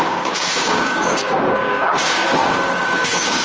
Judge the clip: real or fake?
fake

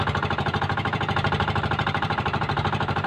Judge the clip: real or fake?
fake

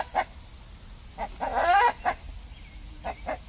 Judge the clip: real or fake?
real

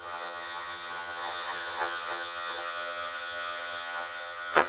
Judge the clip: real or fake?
fake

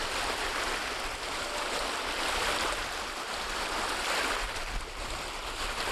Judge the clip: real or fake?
real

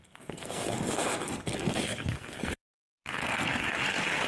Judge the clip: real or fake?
fake